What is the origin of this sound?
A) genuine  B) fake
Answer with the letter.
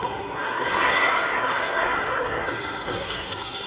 B